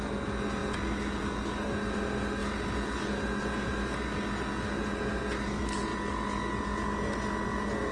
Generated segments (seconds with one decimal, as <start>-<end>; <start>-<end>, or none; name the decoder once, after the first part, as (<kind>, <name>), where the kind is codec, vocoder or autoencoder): none